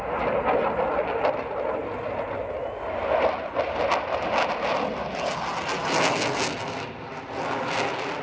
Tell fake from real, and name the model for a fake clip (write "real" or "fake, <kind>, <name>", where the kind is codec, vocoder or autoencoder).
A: real